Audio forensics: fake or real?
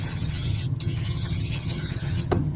fake